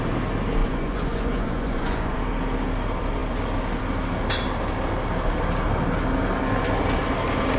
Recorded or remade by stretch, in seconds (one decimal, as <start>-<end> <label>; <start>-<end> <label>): 0.0-0.6 recorded; 0.6-2.2 remade; 2.2-7.6 recorded